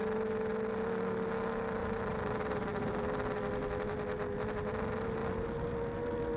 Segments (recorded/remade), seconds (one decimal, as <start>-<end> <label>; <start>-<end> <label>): 0.0-1.8 recorded; 1.8-2.9 remade; 2.9-6.4 recorded